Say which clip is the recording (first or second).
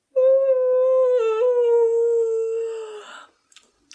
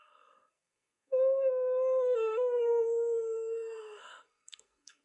first